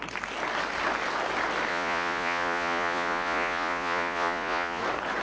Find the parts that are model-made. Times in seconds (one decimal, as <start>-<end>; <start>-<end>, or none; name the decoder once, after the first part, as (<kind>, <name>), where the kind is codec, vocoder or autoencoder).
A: 1.7-4.8 (vocoder, Vocos)